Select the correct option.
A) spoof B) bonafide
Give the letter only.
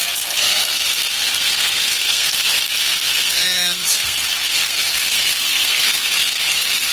A